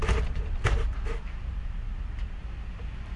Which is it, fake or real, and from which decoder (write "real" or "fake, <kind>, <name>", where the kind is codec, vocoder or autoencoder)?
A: real